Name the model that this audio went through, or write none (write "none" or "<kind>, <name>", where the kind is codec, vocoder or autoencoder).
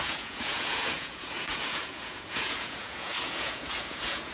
vocoder, Vocos